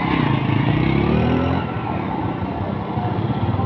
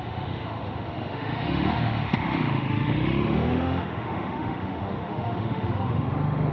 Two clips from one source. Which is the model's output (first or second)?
second